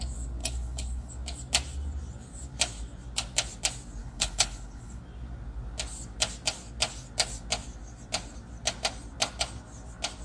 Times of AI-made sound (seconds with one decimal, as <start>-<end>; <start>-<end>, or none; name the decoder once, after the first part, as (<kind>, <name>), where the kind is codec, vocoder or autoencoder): 0.4-1.1 (codec, HILCodec); 4.0-5.0